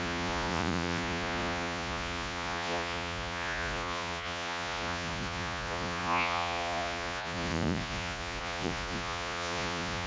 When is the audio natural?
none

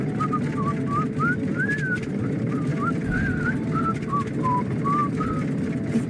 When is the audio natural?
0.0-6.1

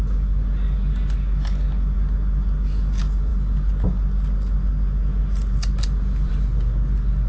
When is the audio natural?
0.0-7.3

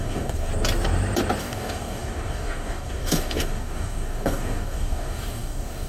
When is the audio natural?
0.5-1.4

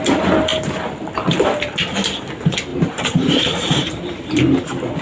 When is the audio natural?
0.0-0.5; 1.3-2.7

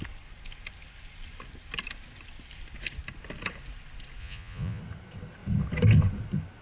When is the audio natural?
0.0-4.2; 4.8-6.6

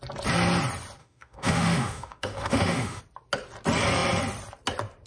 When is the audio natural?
0.0-1.0; 3.0-5.1